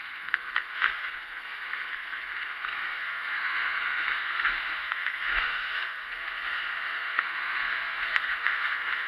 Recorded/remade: remade